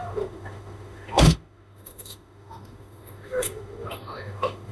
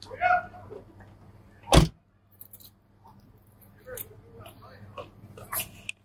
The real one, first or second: second